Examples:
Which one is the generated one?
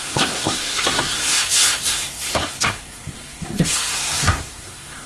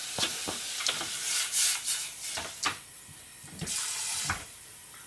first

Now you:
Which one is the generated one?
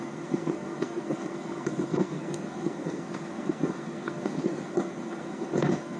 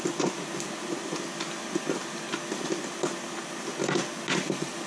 first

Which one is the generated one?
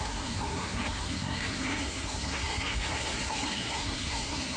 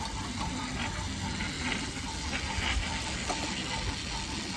first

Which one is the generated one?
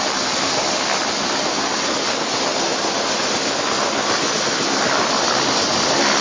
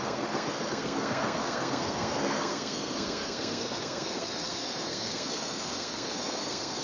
second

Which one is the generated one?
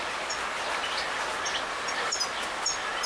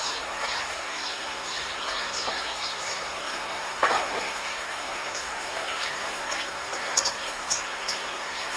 second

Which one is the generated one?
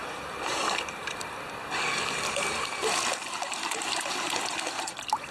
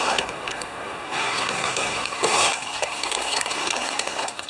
second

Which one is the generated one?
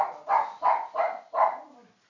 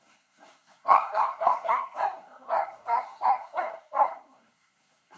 second